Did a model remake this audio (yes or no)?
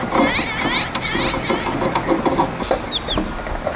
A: no